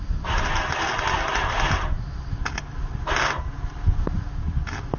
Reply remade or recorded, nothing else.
recorded